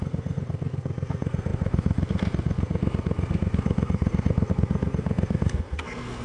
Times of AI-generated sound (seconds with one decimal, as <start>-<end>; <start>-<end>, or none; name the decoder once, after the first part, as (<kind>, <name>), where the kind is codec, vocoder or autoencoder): 0.0-6.2 (codec, SNAC)